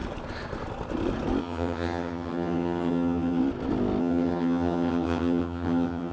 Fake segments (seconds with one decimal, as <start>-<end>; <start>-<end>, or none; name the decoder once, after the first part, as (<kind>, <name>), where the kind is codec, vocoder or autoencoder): 1.4-3.4 (vocoder, HiFi-GAN); 4.0-6.1